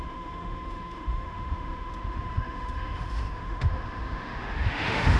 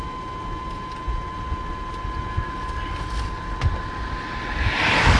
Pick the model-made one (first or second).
first